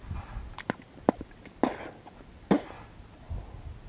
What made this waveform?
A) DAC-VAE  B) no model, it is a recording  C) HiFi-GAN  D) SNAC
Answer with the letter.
B